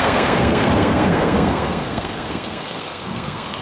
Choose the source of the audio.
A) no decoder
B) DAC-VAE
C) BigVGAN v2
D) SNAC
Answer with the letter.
D